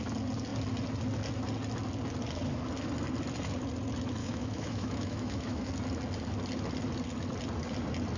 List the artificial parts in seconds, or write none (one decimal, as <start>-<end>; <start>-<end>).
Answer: 4.2-5.7